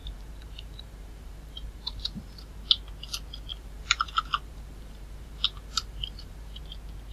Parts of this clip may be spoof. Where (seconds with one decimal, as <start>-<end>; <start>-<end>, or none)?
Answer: 0.0-2.6; 3.5-6.6